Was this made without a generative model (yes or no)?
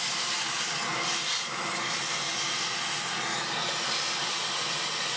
yes